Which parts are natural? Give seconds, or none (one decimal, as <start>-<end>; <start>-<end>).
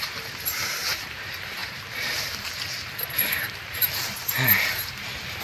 none